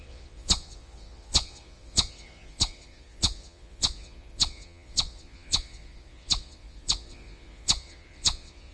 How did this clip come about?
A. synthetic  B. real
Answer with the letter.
A